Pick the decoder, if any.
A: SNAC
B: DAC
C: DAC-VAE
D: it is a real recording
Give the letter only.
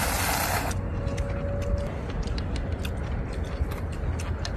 D